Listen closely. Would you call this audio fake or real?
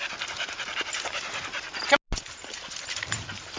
real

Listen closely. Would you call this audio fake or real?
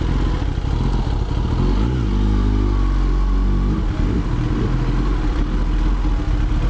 real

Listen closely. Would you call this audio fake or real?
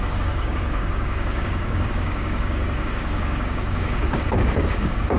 fake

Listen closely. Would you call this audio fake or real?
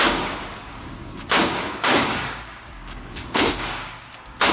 fake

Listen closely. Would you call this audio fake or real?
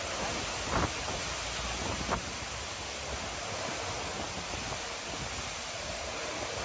real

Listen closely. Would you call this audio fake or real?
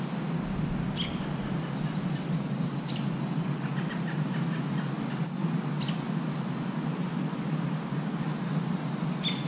real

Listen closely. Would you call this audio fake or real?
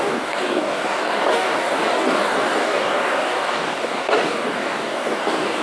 fake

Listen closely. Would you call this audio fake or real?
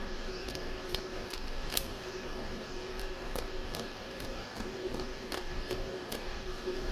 fake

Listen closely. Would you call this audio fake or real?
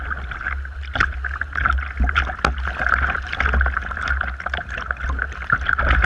real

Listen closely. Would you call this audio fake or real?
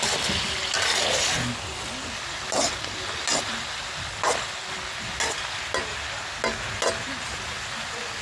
real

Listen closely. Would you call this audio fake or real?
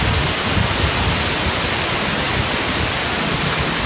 real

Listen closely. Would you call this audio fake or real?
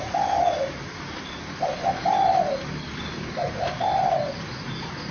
real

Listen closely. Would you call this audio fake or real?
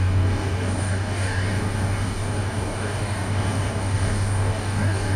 fake